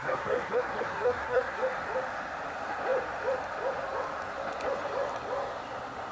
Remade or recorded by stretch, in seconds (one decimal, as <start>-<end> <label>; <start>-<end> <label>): 0.0-1.6 remade; 1.6-6.1 recorded